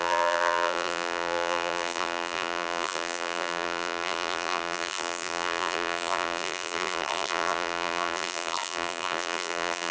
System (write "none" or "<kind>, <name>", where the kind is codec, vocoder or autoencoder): vocoder, BigVGAN v2